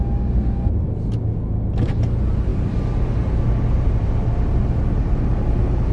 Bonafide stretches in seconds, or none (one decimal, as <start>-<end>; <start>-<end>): 0.0-5.9